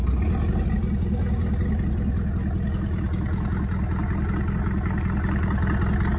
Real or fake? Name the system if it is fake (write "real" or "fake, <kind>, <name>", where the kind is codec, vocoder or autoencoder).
real